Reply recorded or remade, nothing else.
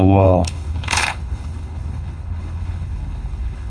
remade